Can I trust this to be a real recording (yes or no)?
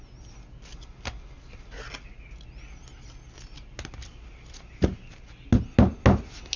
yes